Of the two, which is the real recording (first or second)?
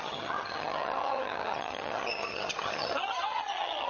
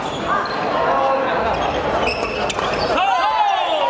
second